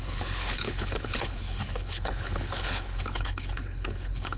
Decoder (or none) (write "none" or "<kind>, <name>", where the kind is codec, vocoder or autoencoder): codec, HILCodec